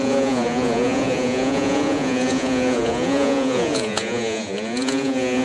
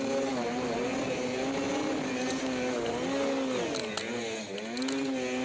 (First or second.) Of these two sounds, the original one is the second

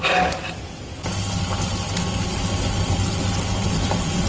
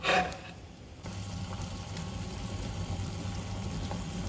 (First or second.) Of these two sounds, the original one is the first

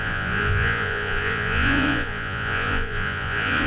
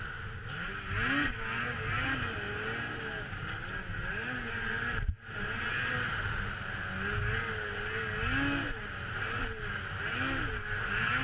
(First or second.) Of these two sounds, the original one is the second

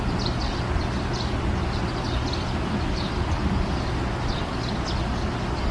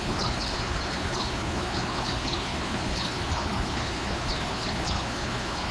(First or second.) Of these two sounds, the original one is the first